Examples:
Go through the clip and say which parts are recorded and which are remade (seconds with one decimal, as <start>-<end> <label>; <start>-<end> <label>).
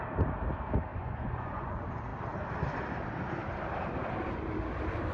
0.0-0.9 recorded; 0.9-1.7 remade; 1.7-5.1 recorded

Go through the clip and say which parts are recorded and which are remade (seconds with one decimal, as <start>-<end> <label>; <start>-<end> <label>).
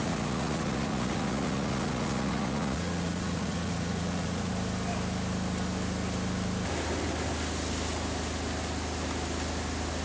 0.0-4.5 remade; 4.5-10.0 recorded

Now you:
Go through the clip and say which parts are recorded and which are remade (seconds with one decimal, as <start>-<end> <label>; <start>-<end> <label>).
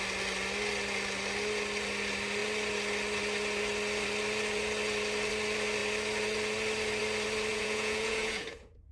0.0-7.5 recorded; 7.5-8.9 remade